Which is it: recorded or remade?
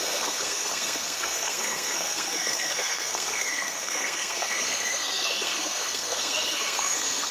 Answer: remade